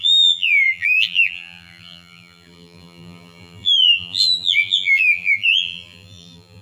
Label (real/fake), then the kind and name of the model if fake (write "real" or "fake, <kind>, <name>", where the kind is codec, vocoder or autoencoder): fake, vocoder, BigVGAN v2